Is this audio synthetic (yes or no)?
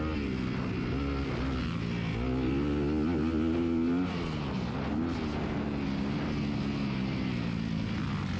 no